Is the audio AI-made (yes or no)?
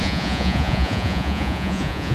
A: yes